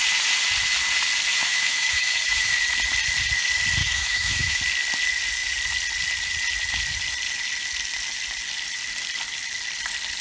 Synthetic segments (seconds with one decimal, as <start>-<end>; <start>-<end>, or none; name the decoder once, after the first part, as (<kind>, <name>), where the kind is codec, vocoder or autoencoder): 1.3-2.5 (autoencoder, DAC-VAE); 3.8-4.6